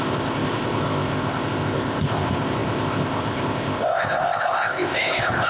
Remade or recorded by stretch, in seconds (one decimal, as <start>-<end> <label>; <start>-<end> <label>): 0.0-5.5 remade

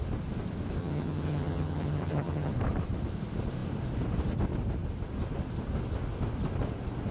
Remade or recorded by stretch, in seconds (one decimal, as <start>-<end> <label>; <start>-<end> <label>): 0.0-0.8 recorded; 0.8-2.5 remade; 2.5-7.1 recorded